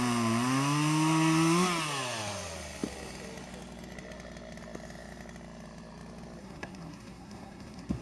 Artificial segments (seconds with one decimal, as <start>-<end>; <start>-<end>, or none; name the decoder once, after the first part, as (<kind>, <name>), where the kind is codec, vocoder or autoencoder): 6.4-8.0 (codec, SNAC)